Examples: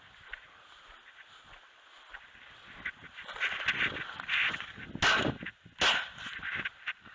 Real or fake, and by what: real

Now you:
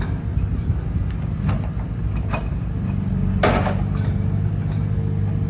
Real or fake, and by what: real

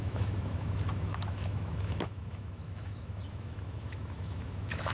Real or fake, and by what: fake, autoencoder, DAC-VAE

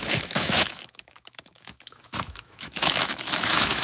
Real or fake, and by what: fake, autoencoder, DAC-VAE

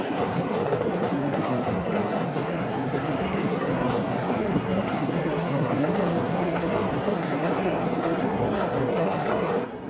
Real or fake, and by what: fake, codec, SNAC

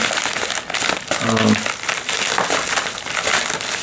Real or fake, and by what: real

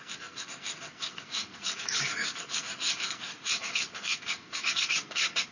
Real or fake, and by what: fake, codec, SNAC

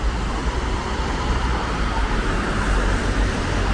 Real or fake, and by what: real